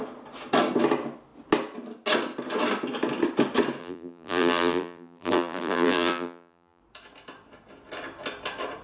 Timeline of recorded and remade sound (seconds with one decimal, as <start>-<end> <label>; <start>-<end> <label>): 0.0-3.8 recorded; 3.8-6.8 remade; 6.8-8.8 recorded